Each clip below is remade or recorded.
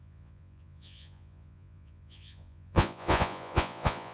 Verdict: remade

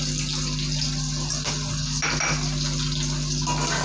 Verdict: recorded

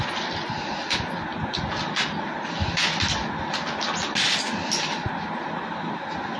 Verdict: recorded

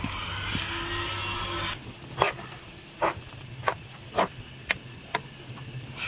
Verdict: recorded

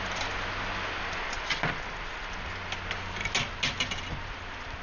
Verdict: recorded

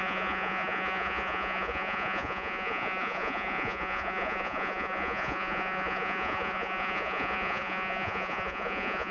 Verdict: remade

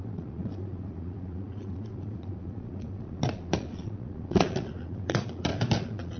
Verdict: remade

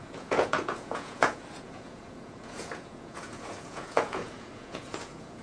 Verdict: remade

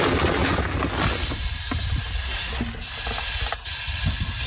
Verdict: recorded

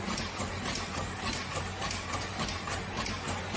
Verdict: recorded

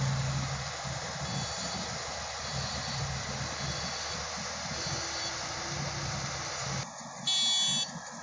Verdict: recorded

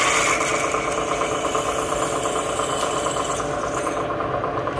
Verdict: recorded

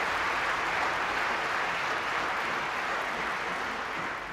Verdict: recorded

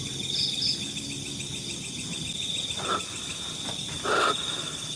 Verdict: recorded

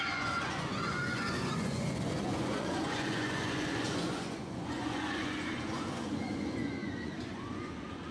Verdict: remade